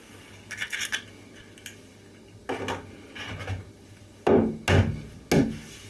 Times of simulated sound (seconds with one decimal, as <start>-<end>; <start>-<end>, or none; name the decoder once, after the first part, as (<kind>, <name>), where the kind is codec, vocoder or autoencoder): none